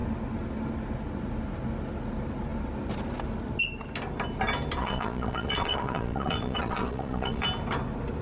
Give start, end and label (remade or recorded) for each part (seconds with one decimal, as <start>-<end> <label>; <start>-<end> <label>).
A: 0.0-4.8 recorded; 4.8-7.4 remade; 7.4-8.2 recorded